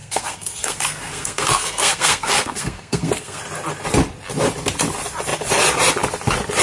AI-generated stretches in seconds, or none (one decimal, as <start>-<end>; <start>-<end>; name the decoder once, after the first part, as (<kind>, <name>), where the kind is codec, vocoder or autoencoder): 0.0-3.4 (codec, SNAC)